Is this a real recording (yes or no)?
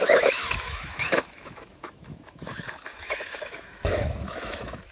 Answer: no